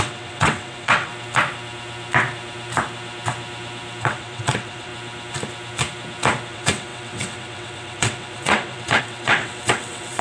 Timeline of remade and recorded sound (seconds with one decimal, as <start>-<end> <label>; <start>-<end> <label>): 0.0-1.1 remade; 1.1-4.0 recorded; 4.0-4.9 remade; 4.9-6.5 recorded; 6.5-10.2 remade